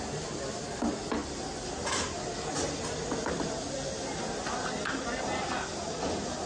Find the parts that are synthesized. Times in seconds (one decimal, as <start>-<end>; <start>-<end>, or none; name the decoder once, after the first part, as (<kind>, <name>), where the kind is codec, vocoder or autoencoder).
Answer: none